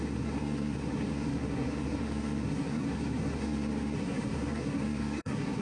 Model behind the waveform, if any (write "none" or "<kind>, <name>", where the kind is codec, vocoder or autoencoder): codec, SNAC